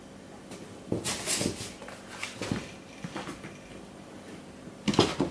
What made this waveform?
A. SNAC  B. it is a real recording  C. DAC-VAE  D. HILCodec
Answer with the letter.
B